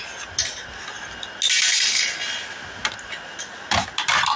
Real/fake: real